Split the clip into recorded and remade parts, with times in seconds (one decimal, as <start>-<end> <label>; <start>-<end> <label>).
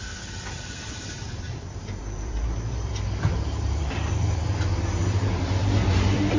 0.0-6.4 remade